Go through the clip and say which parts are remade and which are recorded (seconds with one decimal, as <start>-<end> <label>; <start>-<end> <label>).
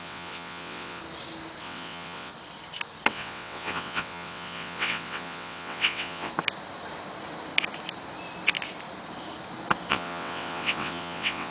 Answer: 0.0-1.0 remade; 1.0-1.6 recorded; 1.6-2.3 remade; 2.3-3.1 recorded; 3.1-6.3 remade; 6.3-9.9 recorded; 9.9-11.5 remade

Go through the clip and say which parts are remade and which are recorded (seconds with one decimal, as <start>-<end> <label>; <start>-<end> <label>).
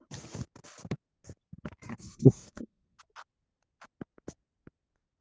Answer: 0.0-1.9 recorded; 1.9-3.0 remade; 3.0-5.2 recorded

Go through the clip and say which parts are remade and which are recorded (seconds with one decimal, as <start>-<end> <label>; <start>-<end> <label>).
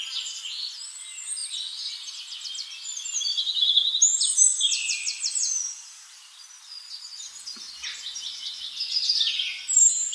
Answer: 0.0-10.1 recorded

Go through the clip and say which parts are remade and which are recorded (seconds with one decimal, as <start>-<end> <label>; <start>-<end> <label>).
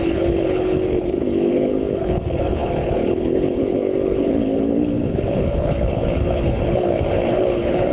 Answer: 0.0-7.9 remade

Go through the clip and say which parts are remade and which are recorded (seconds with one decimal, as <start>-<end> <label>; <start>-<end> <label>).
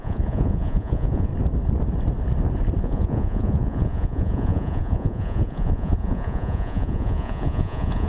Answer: 0.0-1.3 remade; 1.3-2.8 recorded; 2.8-8.1 remade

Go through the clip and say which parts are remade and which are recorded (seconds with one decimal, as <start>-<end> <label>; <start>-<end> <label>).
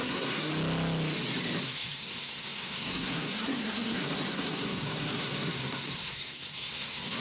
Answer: 0.0-0.5 remade; 0.5-1.6 recorded; 1.6-7.2 remade